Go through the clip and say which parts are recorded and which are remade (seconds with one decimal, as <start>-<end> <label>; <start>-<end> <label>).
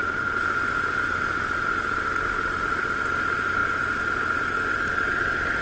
0.0-5.6 recorded